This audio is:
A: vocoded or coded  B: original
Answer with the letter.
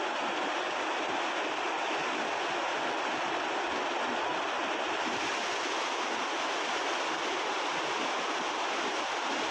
B